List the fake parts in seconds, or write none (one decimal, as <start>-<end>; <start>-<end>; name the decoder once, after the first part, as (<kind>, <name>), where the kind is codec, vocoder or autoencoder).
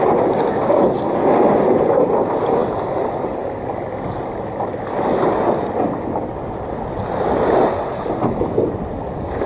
none